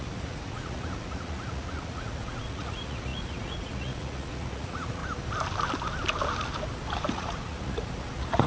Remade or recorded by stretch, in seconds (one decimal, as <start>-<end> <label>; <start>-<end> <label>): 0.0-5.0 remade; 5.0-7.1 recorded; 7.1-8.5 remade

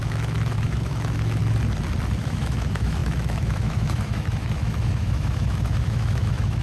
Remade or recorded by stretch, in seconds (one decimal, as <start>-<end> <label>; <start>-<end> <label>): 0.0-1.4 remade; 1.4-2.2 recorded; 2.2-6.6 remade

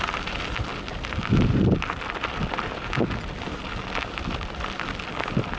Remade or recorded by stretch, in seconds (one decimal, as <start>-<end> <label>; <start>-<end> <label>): 0.0-5.6 recorded

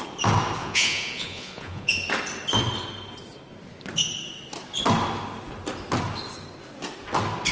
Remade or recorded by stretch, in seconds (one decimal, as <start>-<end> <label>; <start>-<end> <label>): 0.0-0.6 recorded; 0.6-1.9 remade; 1.9-7.5 recorded